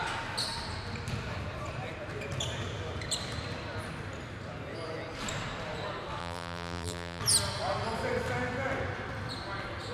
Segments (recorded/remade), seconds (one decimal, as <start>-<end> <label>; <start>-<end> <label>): 0.0-6.2 recorded; 6.2-7.2 remade; 7.2-9.9 recorded